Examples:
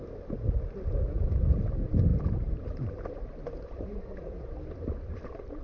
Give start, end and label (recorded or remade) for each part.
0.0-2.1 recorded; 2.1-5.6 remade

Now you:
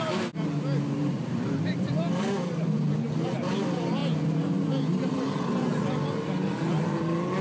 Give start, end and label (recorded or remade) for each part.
0.0-1.0 recorded; 1.0-2.4 remade; 2.4-4.0 recorded; 4.0-5.2 remade; 5.2-7.4 recorded

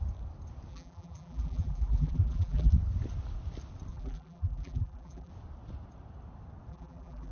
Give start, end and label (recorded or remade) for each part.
0.0-0.7 recorded; 0.7-2.7 remade; 2.7-3.9 recorded; 3.9-5.3 remade; 5.3-6.7 recorded; 6.7-7.3 remade